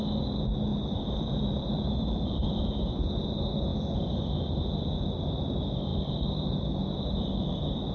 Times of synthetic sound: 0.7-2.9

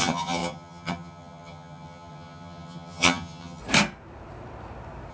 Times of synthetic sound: 0.0-3.6

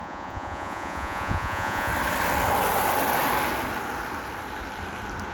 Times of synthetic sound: 0.0-1.9

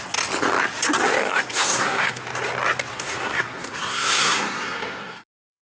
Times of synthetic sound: 1.2-2.2; 2.9-5.6

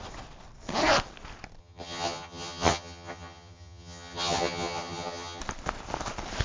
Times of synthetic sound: 1.6-5.4